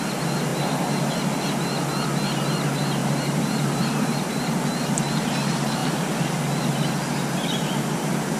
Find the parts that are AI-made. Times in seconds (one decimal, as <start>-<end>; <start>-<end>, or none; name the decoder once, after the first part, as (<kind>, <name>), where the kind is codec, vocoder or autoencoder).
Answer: 0.5-1.1 (vocoder, BigVGAN v2); 3.0-4.3